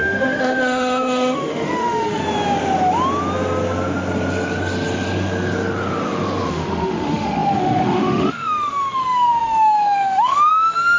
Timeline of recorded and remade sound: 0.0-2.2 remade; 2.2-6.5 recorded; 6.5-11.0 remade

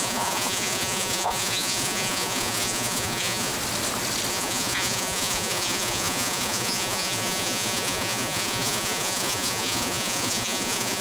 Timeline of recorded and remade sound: 0.0-3.5 remade; 3.5-4.3 recorded; 4.3-11.0 remade

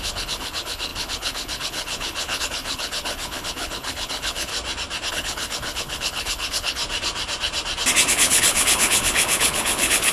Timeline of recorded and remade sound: 0.0-4.5 remade; 4.5-5.1 recorded; 5.1-6.8 remade; 6.8-8.1 recorded; 8.1-10.1 remade